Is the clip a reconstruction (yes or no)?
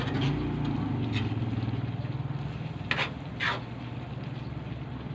no